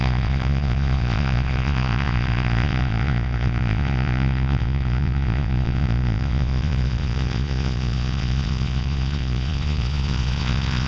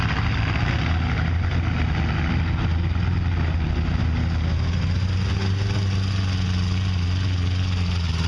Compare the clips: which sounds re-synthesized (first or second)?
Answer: first